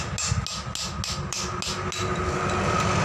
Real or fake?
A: real